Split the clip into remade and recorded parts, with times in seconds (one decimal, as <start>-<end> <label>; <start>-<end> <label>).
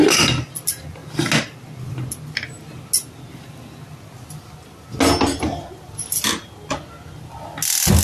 0.0-8.0 recorded